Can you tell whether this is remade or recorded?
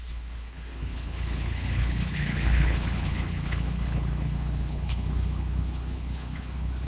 remade